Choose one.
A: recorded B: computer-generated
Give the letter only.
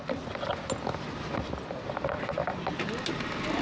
A